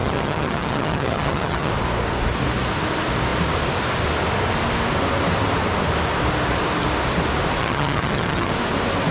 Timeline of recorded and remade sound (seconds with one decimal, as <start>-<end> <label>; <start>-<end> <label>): 0.0-1.7 remade; 1.7-7.6 recorded; 7.6-8.5 remade; 8.5-9.1 recorded